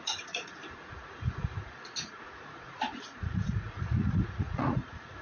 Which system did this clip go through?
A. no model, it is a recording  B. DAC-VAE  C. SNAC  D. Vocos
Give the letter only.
D